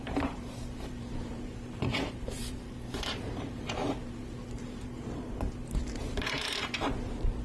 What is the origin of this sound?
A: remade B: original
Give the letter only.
A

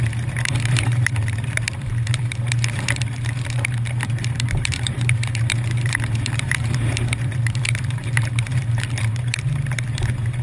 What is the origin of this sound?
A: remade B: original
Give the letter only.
A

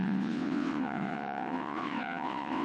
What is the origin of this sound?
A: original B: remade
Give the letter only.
B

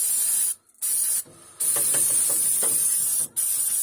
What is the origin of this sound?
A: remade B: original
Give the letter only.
B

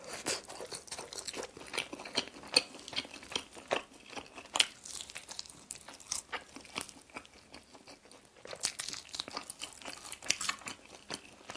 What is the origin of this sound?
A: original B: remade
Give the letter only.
A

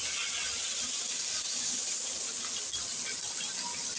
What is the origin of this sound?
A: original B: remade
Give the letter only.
B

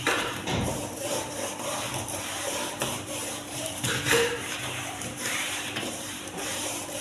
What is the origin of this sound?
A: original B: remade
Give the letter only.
B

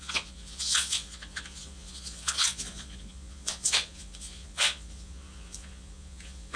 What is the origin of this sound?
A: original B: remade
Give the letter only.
B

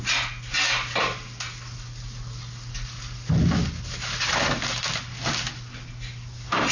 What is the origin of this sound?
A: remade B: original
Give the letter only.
B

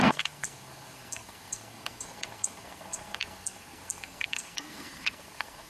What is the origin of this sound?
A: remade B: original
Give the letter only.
A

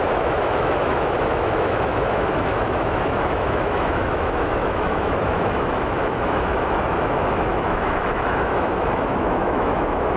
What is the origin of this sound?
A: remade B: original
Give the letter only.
A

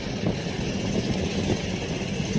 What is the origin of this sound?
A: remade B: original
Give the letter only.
B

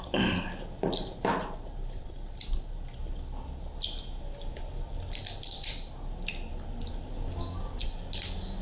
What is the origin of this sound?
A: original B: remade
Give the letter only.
A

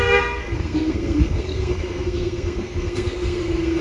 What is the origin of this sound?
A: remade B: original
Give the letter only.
A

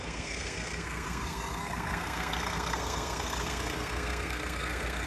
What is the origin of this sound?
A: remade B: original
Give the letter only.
A